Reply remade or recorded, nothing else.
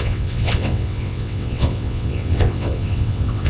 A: remade